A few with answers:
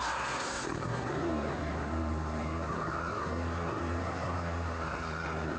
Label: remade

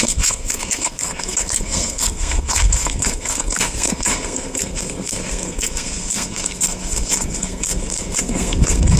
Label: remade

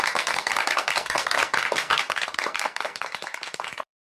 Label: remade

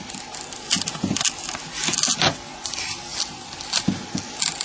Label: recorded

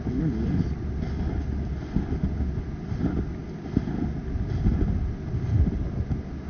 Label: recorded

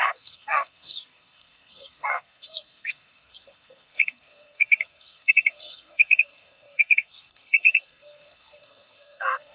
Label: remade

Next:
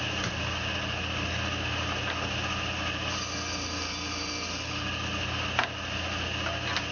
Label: recorded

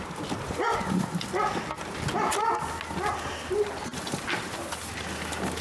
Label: recorded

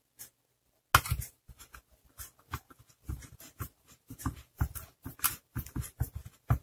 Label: recorded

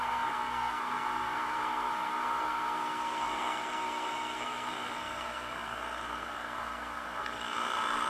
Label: remade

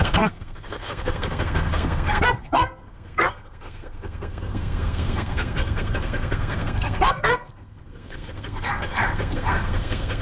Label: remade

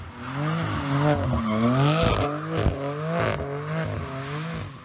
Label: recorded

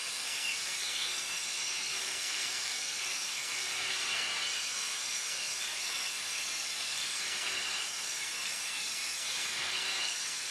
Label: remade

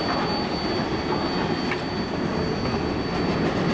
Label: recorded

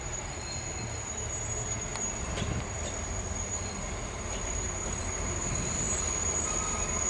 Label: recorded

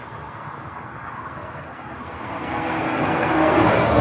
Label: remade